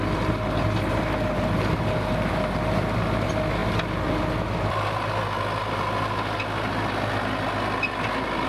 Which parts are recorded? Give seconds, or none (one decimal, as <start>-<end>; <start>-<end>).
0.0-8.5